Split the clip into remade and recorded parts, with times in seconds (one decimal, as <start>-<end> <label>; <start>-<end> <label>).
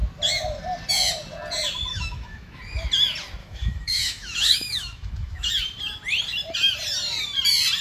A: 0.0-1.9 recorded; 1.9-2.6 remade; 2.6-3.4 recorded; 3.4-5.5 remade; 5.5-7.8 recorded